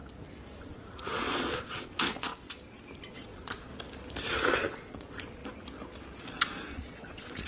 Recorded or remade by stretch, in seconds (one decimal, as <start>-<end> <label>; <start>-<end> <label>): 0.0-0.6 recorded; 0.6-2.3 remade; 2.3-3.0 recorded; 3.0-3.7 remade; 3.7-4.3 recorded; 4.3-5.4 remade; 5.4-6.2 recorded; 6.2-7.5 remade

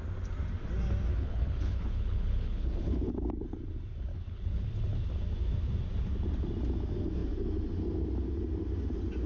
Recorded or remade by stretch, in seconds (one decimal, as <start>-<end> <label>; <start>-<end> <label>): 0.0-1.1 recorded; 1.1-3.1 remade; 3.1-4.1 recorded; 4.1-4.7 remade; 4.7-9.3 recorded

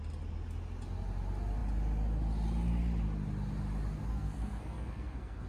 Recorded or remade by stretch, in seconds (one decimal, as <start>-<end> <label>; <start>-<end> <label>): 0.0-4.1 recorded; 4.1-5.5 remade

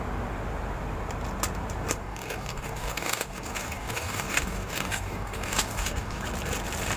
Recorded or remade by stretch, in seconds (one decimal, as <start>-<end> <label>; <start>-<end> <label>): 0.0-2.0 recorded; 2.0-6.2 remade; 6.2-7.0 recorded

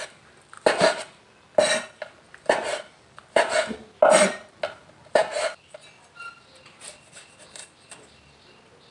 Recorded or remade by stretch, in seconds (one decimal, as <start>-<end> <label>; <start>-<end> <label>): 0.0-8.9 recorded

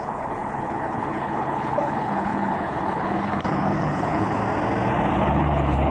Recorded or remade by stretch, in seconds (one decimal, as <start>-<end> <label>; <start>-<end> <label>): 0.0-4.4 remade; 4.4-5.1 recorded; 5.1-5.9 remade